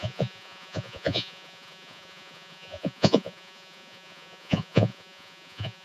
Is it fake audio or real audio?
fake